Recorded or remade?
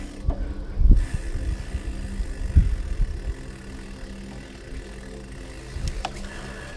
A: recorded